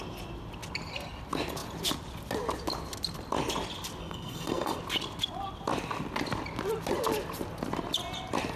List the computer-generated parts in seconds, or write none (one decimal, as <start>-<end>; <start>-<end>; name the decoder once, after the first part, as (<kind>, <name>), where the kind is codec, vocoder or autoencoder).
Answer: 4.0-4.8 (codec, SNAC)